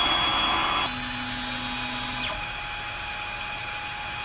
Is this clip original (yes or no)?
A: yes